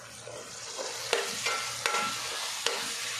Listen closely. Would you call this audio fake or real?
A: real